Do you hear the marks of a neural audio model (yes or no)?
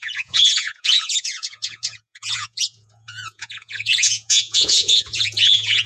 yes